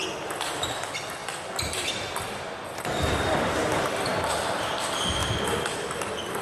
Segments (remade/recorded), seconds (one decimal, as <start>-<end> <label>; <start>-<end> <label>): 0.0-6.4 recorded